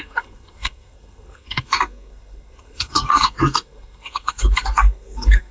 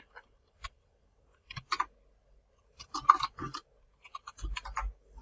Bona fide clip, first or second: second